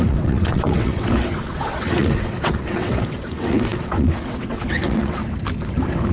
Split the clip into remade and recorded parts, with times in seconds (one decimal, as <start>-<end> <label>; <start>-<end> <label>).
0.0-5.2 remade; 5.2-6.1 recorded